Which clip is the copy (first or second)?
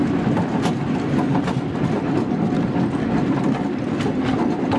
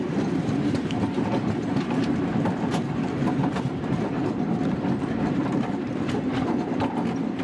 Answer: second